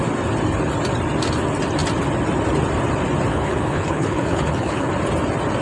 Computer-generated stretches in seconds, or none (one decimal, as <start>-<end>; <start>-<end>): 3.3-4.9